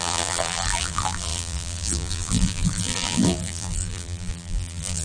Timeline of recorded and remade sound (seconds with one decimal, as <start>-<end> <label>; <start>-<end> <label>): 0.0-5.0 remade